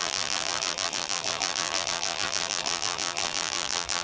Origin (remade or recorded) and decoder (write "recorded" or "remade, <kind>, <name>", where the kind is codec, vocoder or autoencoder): remade, vocoder, BigVGAN v2